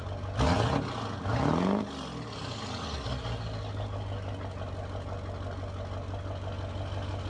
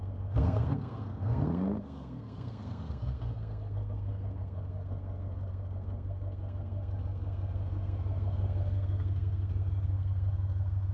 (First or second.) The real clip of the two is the first